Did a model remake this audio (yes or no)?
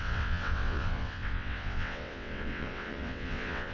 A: yes